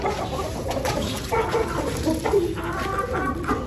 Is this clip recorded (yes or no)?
yes